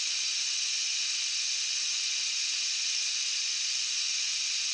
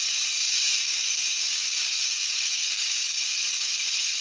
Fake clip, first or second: second